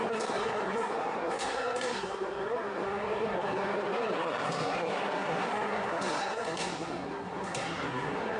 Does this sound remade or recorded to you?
remade